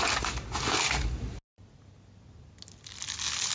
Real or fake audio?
real